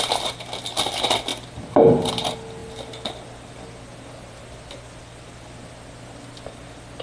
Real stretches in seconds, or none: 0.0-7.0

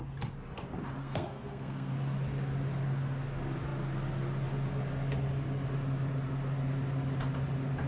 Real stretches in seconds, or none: 0.0-1.0; 1.9-7.9

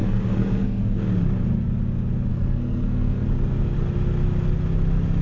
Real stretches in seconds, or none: 0.8-2.3; 3.3-5.2

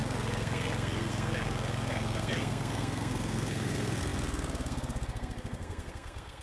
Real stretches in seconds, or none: none